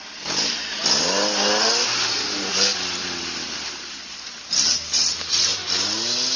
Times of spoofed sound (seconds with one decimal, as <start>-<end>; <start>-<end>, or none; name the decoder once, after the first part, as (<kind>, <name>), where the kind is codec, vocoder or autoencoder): none

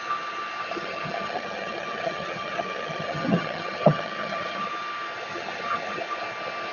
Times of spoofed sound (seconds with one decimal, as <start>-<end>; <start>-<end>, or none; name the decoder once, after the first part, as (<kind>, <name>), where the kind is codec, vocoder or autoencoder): 0.7-4.7 (vocoder, HiFi-GAN); 5.3-6.0

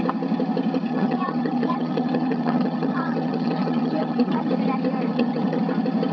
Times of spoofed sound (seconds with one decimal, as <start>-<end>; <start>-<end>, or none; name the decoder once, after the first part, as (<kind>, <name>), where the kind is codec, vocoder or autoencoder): 0.9-4.5 (vocoder, HiFi-GAN); 5.1-5.6

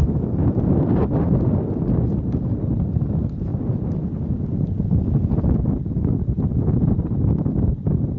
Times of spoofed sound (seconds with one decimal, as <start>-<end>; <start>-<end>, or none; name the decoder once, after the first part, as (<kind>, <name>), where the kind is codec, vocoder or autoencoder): none

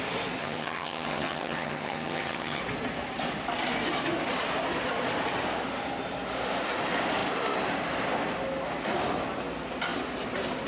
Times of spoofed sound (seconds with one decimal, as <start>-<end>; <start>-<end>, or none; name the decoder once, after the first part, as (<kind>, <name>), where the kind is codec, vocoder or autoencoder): 0.4-2.6 (vocoder, HiFi-GAN)